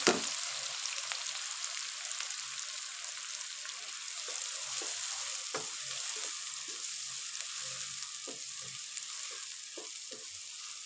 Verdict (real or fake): real